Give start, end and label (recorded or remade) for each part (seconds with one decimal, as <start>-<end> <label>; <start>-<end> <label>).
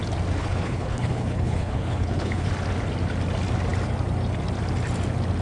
0.0-0.4 recorded; 0.4-2.5 remade; 2.5-5.4 recorded